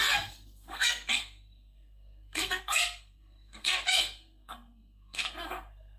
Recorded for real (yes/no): no